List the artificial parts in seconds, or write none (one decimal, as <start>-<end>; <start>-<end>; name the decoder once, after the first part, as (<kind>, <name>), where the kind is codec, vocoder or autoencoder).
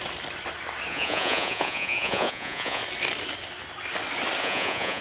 0.9-2.8 (vocoder, Vocos); 4.4-5.0